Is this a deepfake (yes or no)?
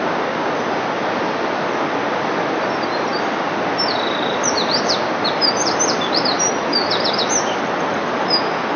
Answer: no